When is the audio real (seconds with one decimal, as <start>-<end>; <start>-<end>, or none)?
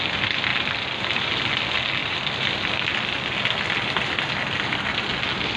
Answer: 0.0-0.5; 1.3-2.0; 4.9-5.6